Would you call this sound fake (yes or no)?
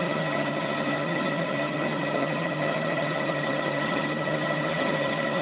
yes